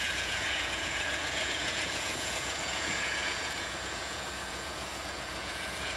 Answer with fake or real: fake